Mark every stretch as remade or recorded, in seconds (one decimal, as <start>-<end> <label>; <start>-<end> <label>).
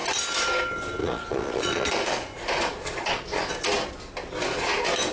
0.0-1.0 recorded; 1.0-3.5 remade; 3.5-5.1 recorded